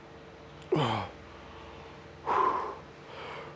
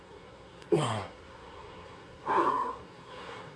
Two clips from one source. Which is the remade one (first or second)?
second